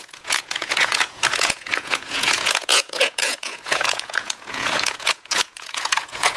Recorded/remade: remade